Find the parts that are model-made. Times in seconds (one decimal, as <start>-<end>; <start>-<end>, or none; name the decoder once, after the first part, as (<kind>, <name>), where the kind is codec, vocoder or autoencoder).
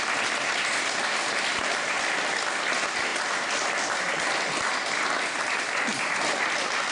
none